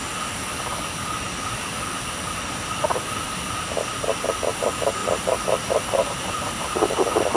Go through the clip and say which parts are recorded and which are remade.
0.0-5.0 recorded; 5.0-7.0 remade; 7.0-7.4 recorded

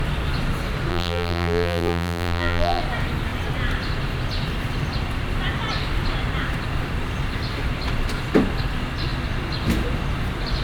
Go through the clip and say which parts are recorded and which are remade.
0.0-0.9 recorded; 0.9-2.8 remade; 2.8-10.6 recorded

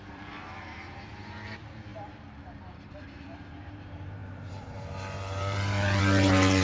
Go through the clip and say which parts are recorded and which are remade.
0.0-6.6 remade

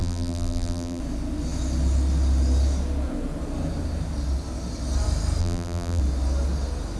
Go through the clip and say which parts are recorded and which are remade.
0.0-1.0 remade; 1.0-5.4 recorded; 5.4-6.0 remade; 6.0-7.0 recorded

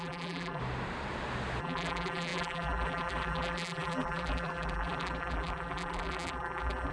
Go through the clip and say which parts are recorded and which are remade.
0.0-0.6 remade; 0.6-1.6 recorded; 1.6-6.9 remade

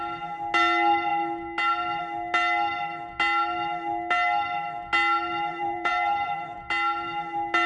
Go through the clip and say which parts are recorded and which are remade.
0.0-5.5 recorded; 5.5-6.7 remade; 6.7-7.7 recorded

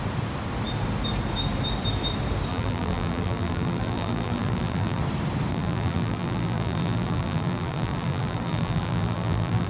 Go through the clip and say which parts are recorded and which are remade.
0.0-2.5 recorded; 2.5-5.0 remade; 5.0-5.5 recorded; 5.5-9.7 remade